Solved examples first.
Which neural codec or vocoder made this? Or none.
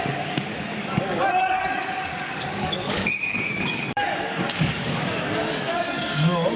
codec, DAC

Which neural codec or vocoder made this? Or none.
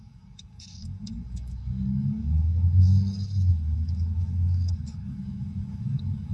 codec, DAC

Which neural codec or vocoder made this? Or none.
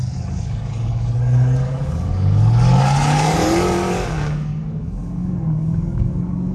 codec, DAC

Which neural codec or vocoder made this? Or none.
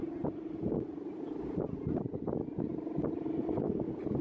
none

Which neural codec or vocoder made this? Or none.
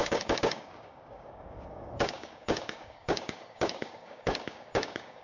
codec, DAC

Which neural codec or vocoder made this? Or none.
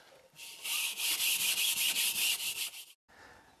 none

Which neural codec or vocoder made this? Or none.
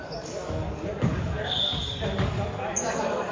codec, DAC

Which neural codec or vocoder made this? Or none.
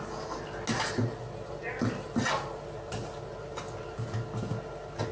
none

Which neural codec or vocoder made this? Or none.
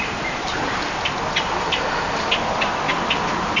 none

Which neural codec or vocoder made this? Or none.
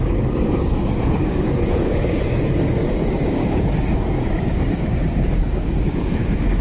codec, DAC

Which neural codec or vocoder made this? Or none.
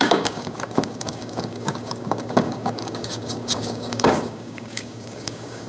codec, DAC